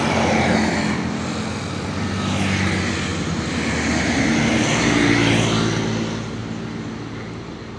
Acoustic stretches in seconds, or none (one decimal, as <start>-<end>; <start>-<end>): 0.0-7.8